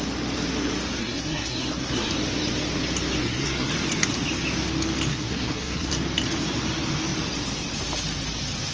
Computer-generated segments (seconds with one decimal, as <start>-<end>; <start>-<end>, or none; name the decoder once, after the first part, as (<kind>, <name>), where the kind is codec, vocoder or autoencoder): 1.0-2.1 (codec, SNAC); 3.2-3.7; 5.1-5.9